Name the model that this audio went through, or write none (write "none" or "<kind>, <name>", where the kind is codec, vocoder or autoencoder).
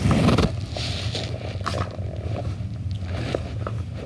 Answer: none